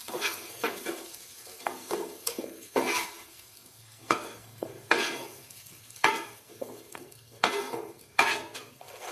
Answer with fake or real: fake